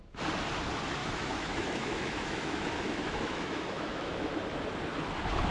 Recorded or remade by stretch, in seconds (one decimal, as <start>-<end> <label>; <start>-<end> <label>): 0.0-1.0 recorded; 1.0-4.3 remade; 4.3-5.5 recorded

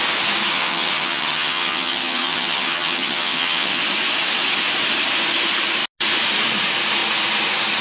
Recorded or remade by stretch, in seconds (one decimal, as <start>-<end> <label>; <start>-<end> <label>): 0.0-0.5 recorded; 0.5-3.8 remade; 3.8-7.8 recorded